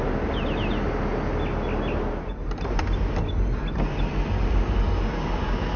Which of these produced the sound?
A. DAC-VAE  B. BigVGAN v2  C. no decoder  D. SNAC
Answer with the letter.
C